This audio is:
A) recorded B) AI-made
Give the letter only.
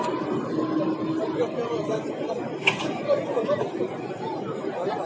A